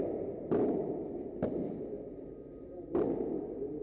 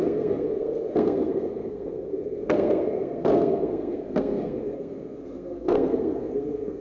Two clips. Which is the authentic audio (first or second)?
first